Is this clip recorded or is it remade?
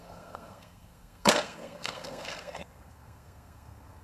remade